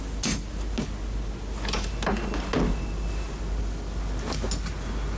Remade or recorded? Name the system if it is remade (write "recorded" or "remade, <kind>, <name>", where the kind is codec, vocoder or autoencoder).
recorded